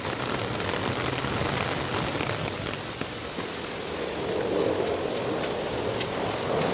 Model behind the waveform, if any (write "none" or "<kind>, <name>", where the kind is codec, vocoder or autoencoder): none